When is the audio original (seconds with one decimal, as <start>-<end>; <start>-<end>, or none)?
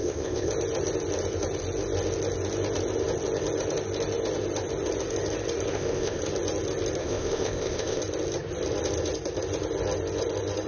0.5-5.7; 6.2-7.0; 8.0-10.7